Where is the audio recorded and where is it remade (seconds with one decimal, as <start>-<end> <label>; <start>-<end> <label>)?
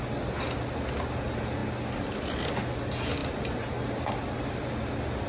0.0-5.3 recorded